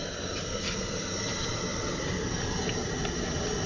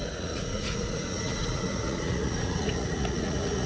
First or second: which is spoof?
second